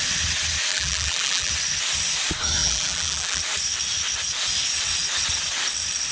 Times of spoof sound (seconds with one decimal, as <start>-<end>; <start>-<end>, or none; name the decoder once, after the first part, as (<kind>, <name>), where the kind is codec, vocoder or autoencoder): 0.7-1.5 (vocoder, BigVGAN v2); 2.6-3.4